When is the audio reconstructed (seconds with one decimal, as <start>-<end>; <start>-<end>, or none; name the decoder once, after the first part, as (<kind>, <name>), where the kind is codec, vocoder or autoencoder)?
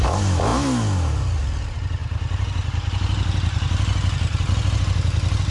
none